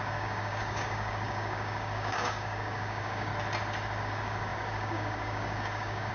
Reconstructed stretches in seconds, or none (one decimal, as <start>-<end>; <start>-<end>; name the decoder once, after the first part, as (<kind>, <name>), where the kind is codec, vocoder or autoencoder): 0.0-3.3 (codec, DAC); 4.0-6.1